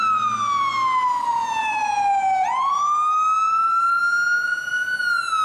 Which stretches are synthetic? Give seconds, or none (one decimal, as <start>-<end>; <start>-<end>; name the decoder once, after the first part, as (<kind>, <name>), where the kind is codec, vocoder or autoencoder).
none